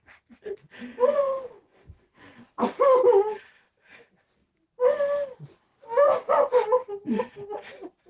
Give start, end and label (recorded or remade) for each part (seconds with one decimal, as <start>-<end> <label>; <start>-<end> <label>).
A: 0.0-0.9 recorded; 0.9-2.4 remade; 2.4-8.1 recorded